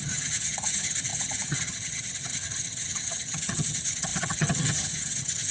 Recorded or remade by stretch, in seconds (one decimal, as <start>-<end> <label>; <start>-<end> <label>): 0.0-5.5 remade